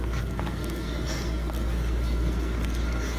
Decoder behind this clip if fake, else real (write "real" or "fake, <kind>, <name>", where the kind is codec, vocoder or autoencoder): fake, codec, SNAC